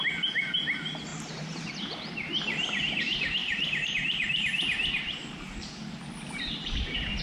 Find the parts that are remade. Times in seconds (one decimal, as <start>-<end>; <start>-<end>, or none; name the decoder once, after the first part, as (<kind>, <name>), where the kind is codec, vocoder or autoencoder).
1.1-1.7 (vocoder, BigVGAN v2); 3.4-5.7